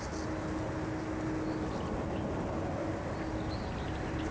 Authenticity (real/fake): real